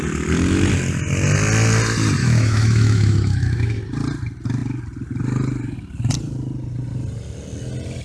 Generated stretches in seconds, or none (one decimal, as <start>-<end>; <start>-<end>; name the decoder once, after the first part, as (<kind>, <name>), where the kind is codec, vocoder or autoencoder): 2.2-3.8 (autoencoder, DAC-VAE)